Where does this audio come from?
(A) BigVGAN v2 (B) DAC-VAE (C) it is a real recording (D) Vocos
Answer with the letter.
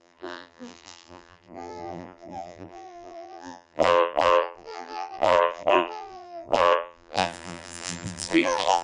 A